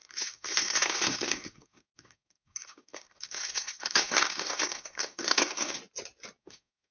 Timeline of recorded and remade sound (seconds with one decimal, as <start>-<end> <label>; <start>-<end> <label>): 0.0-5.8 remade; 5.8-6.4 recorded; 6.4-6.9 remade

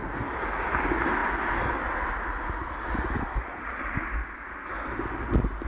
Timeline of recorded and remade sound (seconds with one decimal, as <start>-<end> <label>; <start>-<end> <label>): 0.0-5.7 recorded